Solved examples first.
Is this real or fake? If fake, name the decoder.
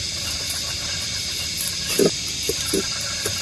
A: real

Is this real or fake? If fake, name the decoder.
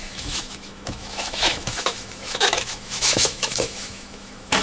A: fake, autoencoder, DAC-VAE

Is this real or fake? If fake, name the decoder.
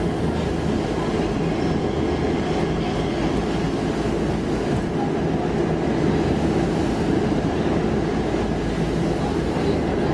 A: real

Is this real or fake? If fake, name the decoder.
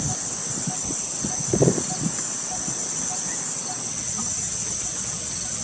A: real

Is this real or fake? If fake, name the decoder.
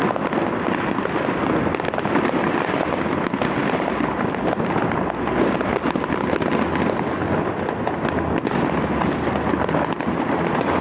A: real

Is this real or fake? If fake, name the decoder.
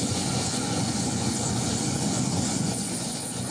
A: fake, vocoder, Vocos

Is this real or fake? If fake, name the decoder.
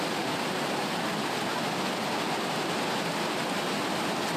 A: real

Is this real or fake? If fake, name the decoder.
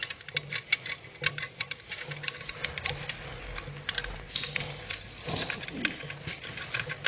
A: real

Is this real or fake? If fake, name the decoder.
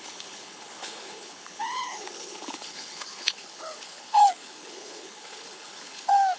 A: fake, codec, HILCodec